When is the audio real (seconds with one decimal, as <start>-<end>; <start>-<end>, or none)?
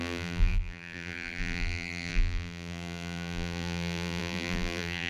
none